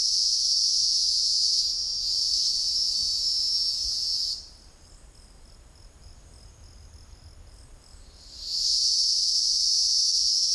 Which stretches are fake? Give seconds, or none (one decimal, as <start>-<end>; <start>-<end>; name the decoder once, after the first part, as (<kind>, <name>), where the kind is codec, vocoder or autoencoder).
0.0-10.5 (vocoder, BigVGAN v2)

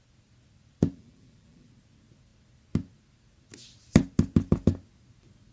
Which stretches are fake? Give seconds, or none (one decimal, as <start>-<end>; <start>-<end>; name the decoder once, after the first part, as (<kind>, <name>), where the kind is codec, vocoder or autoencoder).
0.8-1.7 (vocoder, BigVGAN v2)

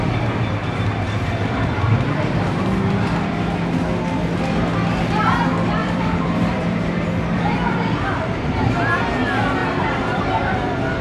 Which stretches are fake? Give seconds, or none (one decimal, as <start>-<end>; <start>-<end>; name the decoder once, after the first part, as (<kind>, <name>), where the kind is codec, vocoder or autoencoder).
0.6-2.6 (vocoder, BigVGAN v2); 5.8-8.7; 9.6-10.3